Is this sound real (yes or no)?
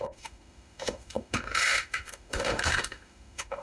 no